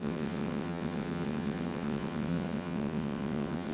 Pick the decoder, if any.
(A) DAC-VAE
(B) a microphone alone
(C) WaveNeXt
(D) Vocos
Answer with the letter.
C